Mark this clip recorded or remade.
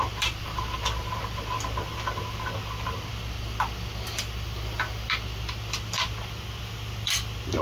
recorded